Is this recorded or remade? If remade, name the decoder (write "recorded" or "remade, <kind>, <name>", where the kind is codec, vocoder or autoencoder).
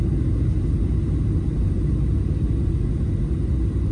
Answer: recorded